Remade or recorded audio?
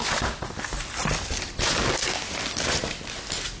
recorded